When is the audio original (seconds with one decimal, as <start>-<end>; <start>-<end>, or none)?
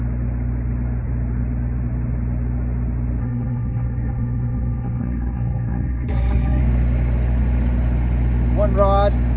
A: 0.0-3.2; 6.6-9.4